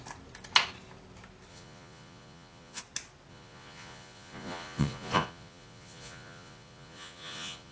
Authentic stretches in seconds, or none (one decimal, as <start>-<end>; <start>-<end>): 0.0-1.5; 2.8-3.3